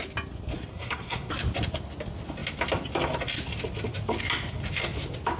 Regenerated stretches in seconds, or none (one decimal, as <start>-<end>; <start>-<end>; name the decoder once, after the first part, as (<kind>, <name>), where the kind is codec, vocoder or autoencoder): 0.7-1.3 (codec, SNAC)